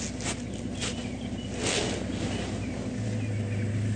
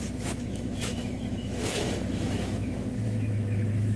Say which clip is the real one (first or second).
first